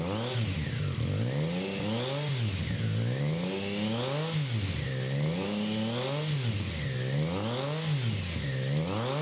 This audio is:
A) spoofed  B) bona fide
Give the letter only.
B